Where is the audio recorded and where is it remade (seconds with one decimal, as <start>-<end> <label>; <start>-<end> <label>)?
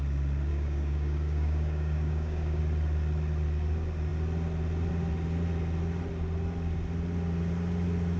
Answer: 0.0-0.5 recorded; 0.5-2.6 remade; 2.6-8.2 recorded